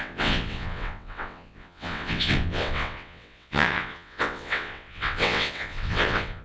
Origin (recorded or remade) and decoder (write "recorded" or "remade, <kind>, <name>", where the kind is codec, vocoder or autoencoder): remade, vocoder, WaveNeXt